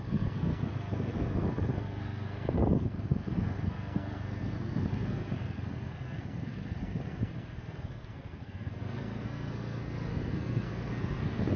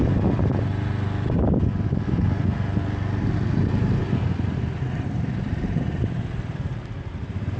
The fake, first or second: first